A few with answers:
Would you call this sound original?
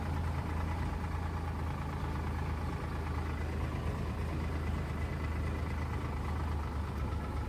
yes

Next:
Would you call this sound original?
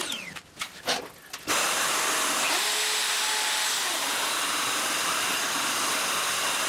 yes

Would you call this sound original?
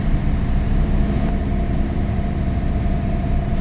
no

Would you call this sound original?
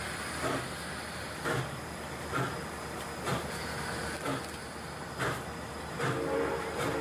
yes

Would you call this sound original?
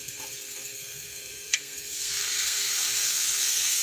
no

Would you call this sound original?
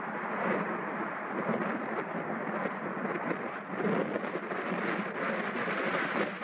yes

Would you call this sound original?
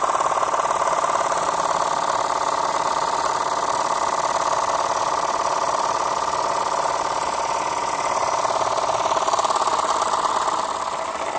yes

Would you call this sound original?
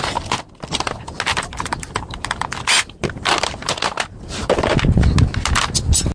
yes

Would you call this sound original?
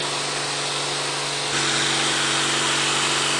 yes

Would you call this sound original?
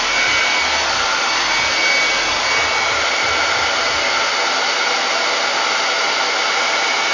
yes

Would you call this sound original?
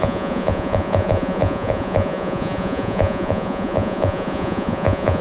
no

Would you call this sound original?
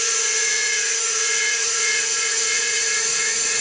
no